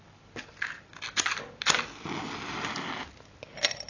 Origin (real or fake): real